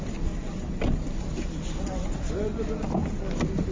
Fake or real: real